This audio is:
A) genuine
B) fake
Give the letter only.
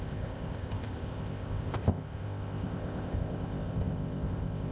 B